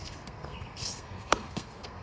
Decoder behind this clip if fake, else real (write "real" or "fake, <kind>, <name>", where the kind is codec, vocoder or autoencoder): fake, codec, SNAC